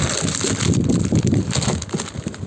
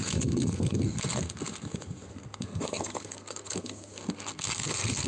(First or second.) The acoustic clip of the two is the first